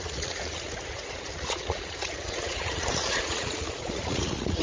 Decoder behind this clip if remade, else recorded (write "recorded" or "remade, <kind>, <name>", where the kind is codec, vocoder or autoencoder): remade, vocoder, Vocos